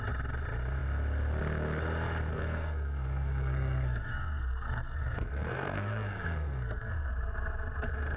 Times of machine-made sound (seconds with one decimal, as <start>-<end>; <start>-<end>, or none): 2.3-7.1